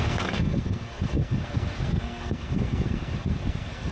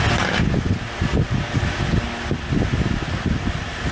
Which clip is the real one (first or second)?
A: second